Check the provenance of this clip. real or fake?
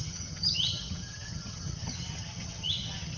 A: fake